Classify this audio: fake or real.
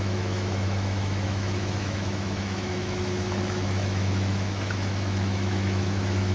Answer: fake